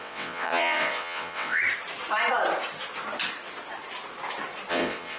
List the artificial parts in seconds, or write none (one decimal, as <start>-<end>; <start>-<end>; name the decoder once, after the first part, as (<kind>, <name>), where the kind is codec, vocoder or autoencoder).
0.0-1.6 (vocoder, WaveNeXt); 4.7-5.2